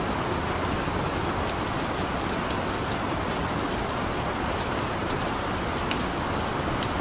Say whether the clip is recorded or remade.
recorded